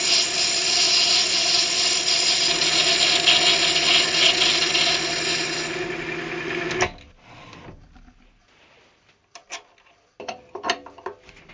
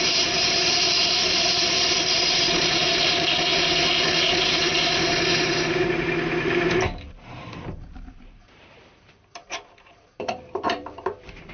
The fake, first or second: second